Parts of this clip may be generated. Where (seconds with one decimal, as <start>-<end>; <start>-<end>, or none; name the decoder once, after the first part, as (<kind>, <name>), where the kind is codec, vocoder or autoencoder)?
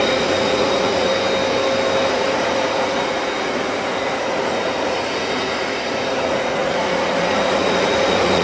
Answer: 0.0-1.1 (vocoder, Vocos); 2.1-8.4